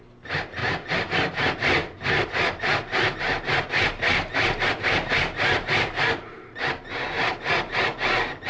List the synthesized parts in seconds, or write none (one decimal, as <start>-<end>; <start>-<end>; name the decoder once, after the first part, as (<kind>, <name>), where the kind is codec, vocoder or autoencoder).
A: none